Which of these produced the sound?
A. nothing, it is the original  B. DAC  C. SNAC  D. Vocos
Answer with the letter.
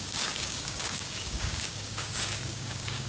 B